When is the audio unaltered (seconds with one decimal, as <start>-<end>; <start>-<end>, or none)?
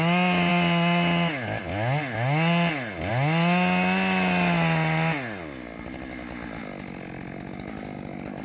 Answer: 0.0-8.4